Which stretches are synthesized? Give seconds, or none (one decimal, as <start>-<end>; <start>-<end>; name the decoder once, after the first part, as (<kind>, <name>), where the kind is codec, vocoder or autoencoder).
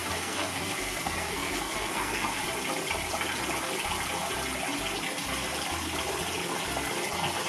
0.0-2.4 (codec, SNAC)